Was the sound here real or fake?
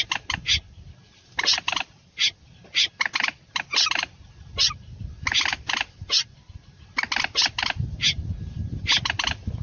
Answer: real